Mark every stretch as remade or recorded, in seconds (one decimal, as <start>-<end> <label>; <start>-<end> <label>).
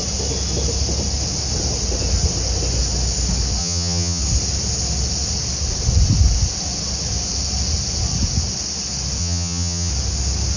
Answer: 0.0-3.6 recorded; 3.6-4.2 remade; 4.2-9.2 recorded; 9.2-9.9 remade; 9.9-10.6 recorded